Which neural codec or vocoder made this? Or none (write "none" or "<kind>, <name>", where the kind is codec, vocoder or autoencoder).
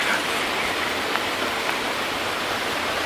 vocoder, BigVGAN v2